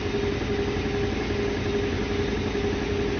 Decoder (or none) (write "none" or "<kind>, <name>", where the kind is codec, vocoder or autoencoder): none